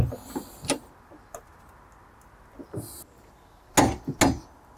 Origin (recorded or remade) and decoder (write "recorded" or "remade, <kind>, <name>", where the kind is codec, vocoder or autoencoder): recorded